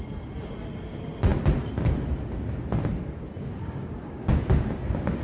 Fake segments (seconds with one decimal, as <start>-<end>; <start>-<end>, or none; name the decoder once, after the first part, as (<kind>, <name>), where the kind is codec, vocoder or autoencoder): 3.4-4.3 (codec, DAC)